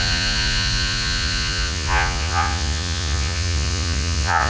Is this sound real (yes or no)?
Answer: no